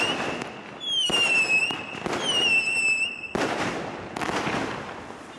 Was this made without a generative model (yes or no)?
yes